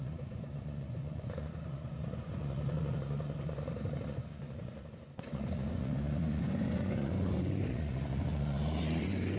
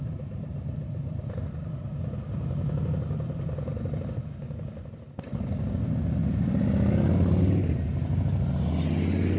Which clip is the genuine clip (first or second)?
second